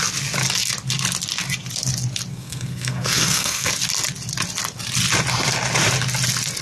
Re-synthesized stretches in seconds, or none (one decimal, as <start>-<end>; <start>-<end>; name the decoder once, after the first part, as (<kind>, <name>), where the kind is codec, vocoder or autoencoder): 2.3-3.7 (codec, SNAC)